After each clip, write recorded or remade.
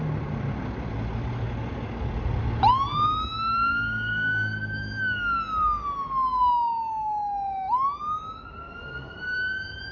recorded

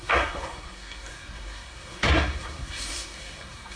remade